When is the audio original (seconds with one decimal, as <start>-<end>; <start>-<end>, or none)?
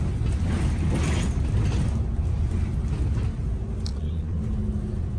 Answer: 0.0-3.9; 4.4-5.2